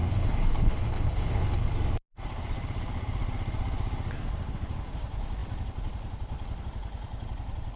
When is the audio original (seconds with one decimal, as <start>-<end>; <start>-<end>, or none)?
1.7-7.8